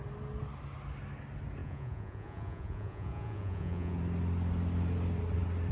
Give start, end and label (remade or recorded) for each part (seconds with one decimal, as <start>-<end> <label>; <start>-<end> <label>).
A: 0.0-1.6 recorded; 1.6-4.0 remade; 4.0-5.7 recorded